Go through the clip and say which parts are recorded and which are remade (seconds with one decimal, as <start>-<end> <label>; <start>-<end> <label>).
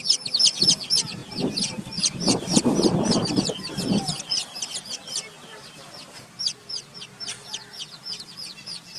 0.0-9.0 recorded